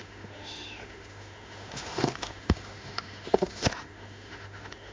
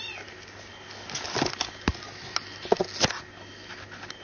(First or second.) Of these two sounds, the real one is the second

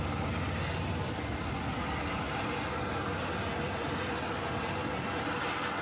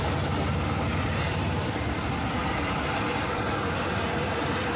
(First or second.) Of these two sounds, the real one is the first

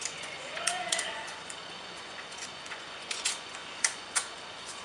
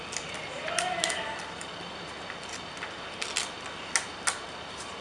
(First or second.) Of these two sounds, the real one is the second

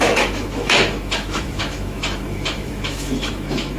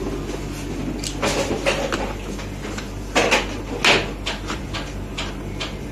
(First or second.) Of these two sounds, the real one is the second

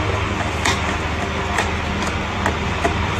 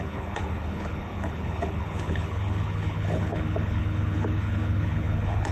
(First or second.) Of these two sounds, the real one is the first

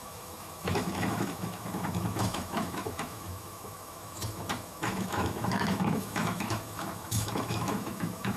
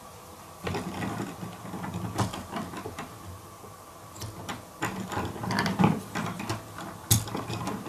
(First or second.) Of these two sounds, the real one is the second